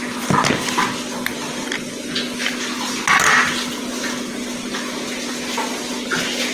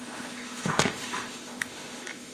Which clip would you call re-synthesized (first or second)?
second